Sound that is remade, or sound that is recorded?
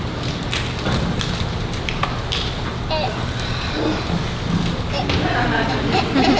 recorded